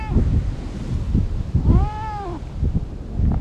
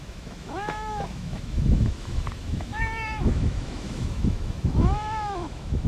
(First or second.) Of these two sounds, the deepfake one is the second